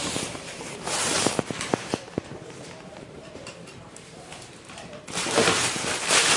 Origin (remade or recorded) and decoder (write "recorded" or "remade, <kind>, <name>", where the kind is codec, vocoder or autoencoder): remade, vocoder, BigVGAN v2